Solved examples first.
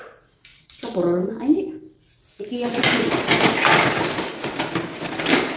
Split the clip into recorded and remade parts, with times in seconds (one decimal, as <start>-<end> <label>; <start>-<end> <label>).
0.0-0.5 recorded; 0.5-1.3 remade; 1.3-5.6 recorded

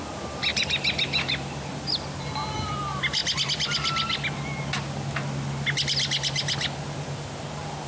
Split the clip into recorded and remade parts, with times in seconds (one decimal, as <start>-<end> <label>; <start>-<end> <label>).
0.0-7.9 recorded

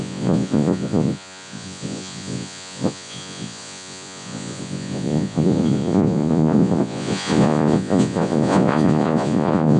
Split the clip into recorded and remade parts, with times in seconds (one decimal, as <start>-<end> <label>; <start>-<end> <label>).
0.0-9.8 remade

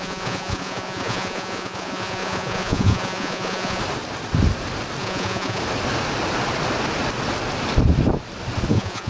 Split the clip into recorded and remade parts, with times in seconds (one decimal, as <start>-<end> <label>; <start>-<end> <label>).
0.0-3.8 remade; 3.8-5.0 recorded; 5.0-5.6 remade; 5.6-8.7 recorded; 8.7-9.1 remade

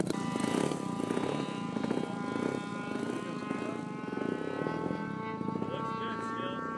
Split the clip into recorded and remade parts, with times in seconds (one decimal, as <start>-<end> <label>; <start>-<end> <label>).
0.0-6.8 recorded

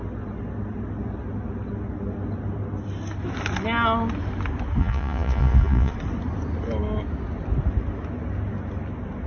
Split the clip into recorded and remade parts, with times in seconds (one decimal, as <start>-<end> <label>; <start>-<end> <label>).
0.0-4.8 recorded; 4.8-5.9 remade; 5.9-9.3 recorded

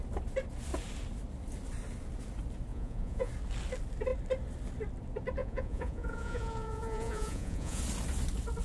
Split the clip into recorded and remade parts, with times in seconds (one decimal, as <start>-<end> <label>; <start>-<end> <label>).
0.0-2.7 recorded; 2.7-3.3 remade; 3.3-5.4 recorded; 5.4-7.8 remade; 7.8-8.6 recorded

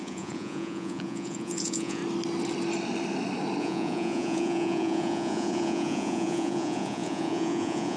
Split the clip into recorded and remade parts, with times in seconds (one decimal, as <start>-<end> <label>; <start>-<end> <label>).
0.0-2.0 remade; 2.0-3.6 recorded; 3.6-8.0 remade